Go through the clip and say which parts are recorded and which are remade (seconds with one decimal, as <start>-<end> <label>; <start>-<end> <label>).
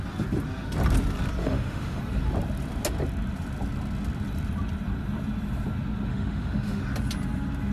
0.0-1.4 recorded; 1.4-2.0 remade; 2.0-6.1 recorded; 6.1-6.8 remade; 6.8-7.7 recorded